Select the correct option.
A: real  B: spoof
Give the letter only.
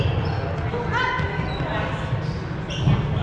A